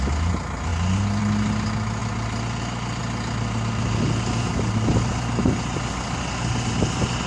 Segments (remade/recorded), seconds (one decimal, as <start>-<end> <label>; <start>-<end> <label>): 0.0-7.3 recorded